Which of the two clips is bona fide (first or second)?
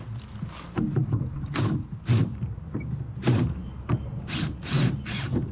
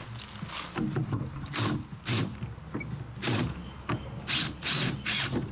second